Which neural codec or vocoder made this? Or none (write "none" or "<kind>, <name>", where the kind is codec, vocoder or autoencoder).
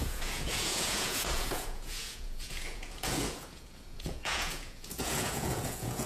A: vocoder, Vocos